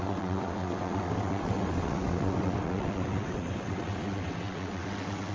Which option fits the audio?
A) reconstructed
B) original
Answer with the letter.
A